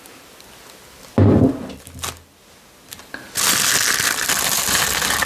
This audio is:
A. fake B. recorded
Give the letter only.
B